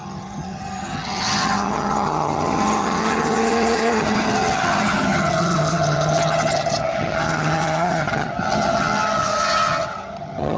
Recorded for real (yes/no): no